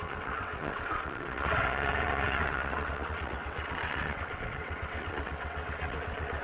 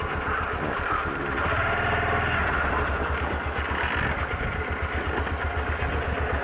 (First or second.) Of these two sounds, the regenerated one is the first